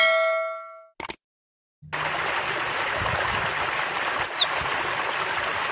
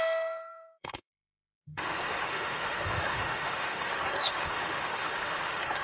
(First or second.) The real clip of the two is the first